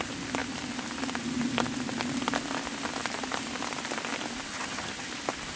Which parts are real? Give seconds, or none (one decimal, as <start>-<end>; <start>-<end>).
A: 0.0-4.5; 5.1-5.6